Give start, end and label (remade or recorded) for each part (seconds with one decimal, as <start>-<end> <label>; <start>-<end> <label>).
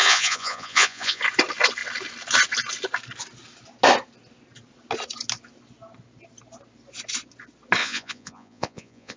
0.0-1.2 remade; 1.2-7.8 recorded; 7.8-9.2 remade